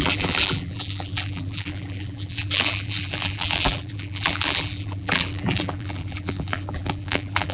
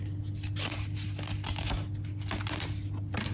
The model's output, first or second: first